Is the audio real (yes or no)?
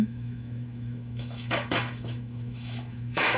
no